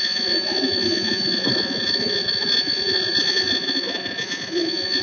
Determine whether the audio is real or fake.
fake